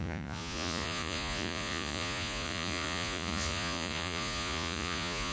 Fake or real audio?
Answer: fake